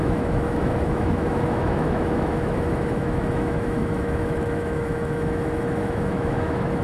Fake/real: fake